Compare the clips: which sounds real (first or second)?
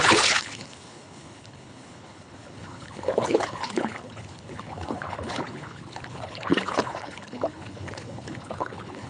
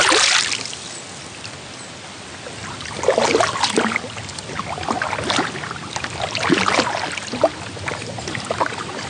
second